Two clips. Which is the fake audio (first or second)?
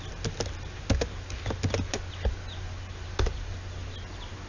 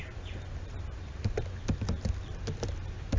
second